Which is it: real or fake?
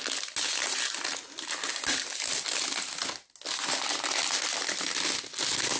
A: real